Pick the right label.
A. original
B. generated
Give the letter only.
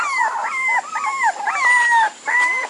A